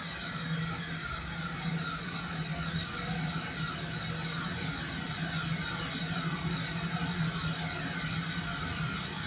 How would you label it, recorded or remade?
recorded